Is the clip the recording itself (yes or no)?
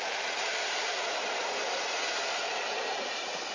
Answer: no